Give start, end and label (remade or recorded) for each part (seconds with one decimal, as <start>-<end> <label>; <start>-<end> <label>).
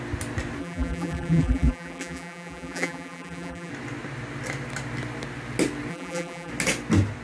0.0-0.6 recorded; 0.6-3.7 remade; 3.7-5.9 recorded; 5.9-6.5 remade; 6.5-7.2 recorded